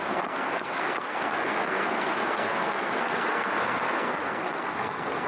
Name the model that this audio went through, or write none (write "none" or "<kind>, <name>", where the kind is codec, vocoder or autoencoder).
codec, SNAC